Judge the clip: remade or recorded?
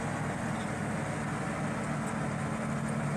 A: recorded